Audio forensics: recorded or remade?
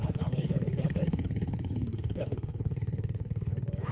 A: remade